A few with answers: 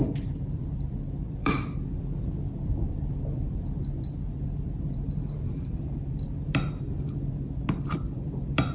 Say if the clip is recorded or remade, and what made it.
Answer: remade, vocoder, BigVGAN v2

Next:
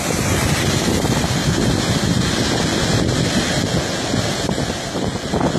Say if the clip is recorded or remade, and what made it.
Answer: recorded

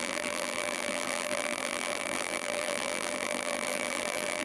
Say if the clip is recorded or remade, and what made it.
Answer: remade, vocoder, BigVGAN v2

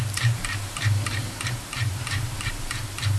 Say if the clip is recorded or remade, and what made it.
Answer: remade, vocoder, BigVGAN v2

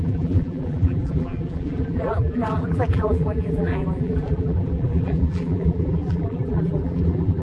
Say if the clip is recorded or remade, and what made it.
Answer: remade, vocoder, BigVGAN v2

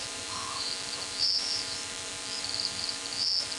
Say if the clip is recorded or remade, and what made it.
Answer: remade, vocoder, BigVGAN v2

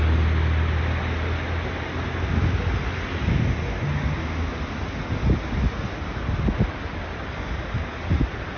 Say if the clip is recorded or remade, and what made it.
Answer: recorded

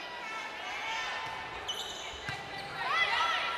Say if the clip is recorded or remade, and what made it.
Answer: recorded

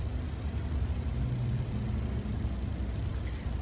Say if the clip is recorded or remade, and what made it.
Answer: recorded